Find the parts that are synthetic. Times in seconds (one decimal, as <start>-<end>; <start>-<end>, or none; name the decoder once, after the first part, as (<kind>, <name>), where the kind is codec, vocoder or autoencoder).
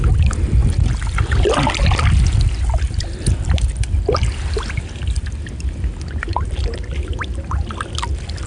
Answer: none